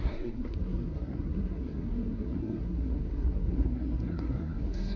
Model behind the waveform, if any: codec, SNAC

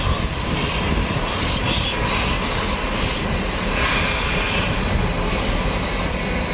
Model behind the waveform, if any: none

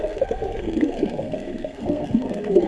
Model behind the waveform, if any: codec, SNAC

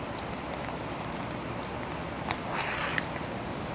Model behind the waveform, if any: none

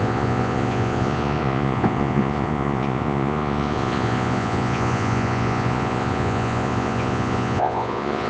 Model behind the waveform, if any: vocoder, Vocos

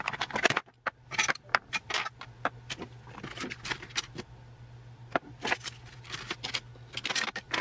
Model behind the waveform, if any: none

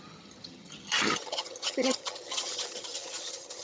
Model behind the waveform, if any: vocoder, HiFi-GAN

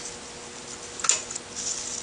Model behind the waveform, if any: none